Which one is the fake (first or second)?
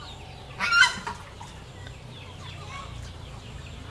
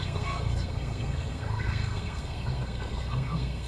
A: second